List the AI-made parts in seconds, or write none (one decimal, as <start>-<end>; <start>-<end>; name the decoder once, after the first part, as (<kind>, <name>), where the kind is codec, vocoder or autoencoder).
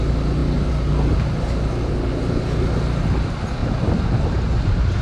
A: none